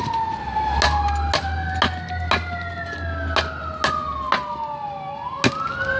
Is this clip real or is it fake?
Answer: real